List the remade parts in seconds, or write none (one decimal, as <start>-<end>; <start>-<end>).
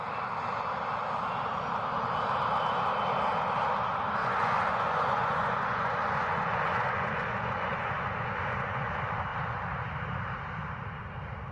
4.2-8.9